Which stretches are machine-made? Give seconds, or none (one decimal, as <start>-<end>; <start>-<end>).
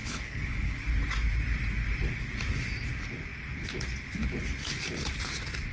0.0-0.8